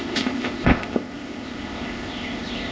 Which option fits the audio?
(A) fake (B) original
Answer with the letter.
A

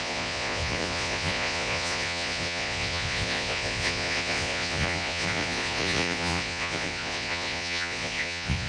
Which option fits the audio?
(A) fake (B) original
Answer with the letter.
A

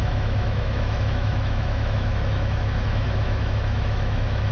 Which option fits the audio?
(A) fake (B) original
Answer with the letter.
A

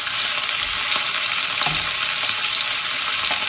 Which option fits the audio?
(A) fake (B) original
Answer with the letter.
B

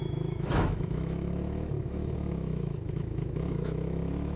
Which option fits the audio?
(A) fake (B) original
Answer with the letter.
A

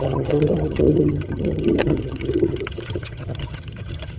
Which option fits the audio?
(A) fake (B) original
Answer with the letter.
A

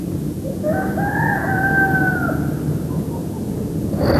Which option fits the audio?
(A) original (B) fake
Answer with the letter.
A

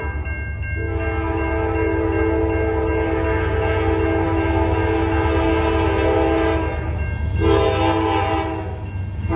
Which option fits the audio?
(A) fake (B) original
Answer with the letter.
B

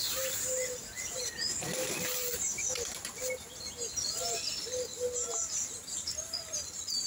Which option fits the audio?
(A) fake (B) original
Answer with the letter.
B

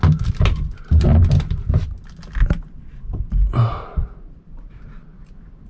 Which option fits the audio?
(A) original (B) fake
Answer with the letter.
A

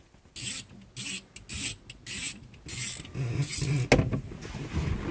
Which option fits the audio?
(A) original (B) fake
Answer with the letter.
A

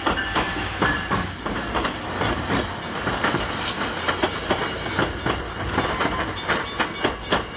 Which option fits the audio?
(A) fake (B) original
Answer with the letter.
B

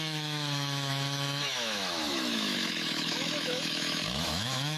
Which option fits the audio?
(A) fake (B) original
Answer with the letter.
A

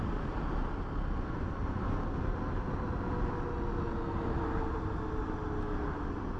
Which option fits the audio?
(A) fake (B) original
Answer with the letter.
B